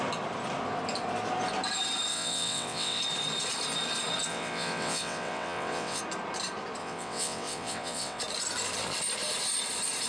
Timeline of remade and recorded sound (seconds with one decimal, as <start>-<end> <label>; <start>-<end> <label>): 0.0-2.1 recorded; 2.1-3.0 remade; 3.0-4.3 recorded; 4.3-6.0 remade; 6.0-6.8 recorded; 6.8-8.2 remade; 8.2-10.1 recorded